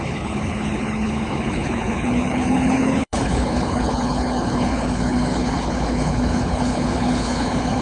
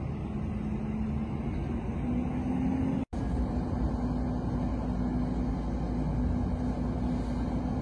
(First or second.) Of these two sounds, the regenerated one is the first